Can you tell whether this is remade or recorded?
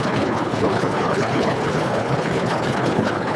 remade